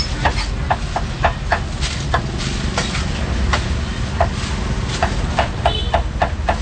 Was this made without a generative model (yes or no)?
yes